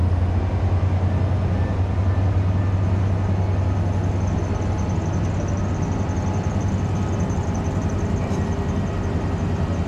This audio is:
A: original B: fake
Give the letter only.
A